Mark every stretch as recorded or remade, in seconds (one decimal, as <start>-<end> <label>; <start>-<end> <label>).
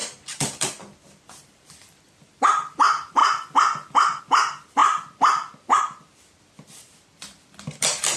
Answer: 0.0-3.2 remade; 3.2-4.2 recorded; 4.2-4.8 remade; 4.8-5.8 recorded; 5.8-8.2 remade